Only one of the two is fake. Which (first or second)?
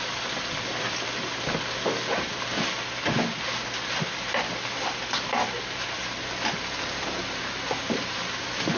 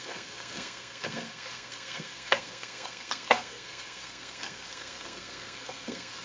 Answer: second